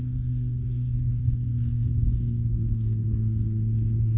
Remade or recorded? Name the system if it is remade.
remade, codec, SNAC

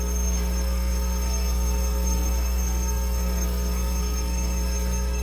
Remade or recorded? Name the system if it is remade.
remade, codec, SNAC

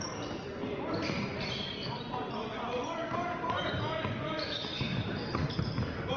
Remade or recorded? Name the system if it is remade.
recorded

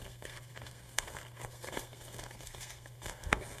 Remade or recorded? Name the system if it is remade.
remade, codec, SNAC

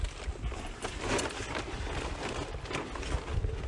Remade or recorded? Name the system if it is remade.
recorded